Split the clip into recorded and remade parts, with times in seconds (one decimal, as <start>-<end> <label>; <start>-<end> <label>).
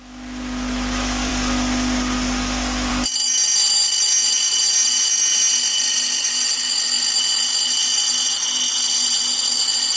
0.0-10.0 recorded